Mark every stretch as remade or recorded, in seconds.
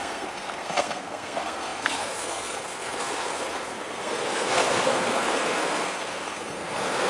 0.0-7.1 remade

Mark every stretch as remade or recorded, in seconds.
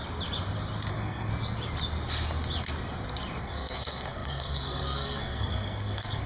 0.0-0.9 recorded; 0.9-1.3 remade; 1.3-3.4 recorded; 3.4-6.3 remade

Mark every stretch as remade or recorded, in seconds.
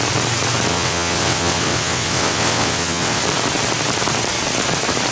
0.0-0.7 recorded; 0.7-3.2 remade; 3.2-5.1 recorded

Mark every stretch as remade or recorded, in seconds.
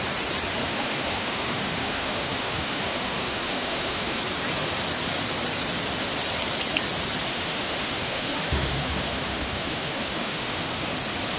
0.0-0.6 recorded; 0.6-4.2 remade; 4.2-7.3 recorded; 7.3-10.9 remade; 10.9-11.4 recorded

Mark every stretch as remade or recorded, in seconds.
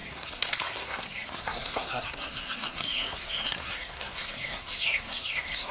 0.0-5.7 remade